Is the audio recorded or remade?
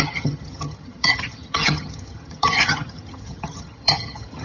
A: remade